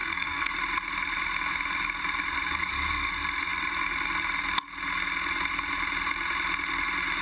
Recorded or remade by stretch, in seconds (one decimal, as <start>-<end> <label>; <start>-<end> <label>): 0.0-0.5 remade; 0.5-7.2 recorded